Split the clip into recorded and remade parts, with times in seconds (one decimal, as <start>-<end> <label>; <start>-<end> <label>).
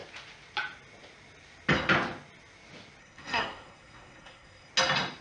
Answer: 0.0-3.0 recorded; 3.0-4.7 remade; 4.7-5.2 recorded